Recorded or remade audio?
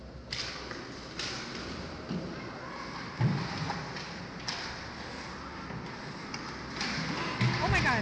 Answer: recorded